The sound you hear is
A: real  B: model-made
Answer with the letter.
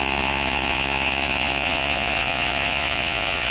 B